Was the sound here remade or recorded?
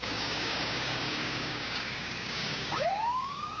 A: remade